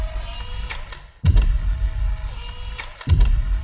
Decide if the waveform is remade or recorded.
recorded